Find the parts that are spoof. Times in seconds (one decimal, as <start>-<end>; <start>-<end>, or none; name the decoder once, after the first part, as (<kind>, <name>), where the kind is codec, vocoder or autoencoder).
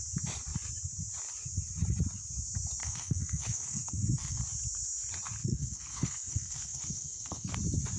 2.8-4.4 (codec, SNAC); 5.4-7.5